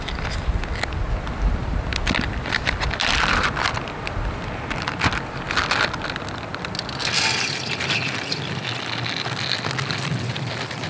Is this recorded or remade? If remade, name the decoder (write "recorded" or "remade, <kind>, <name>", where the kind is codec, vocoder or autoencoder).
recorded